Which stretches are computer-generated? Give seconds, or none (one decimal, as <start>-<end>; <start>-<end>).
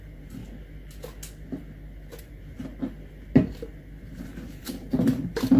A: 0.0-0.4; 2.2-2.7; 4.1-5.6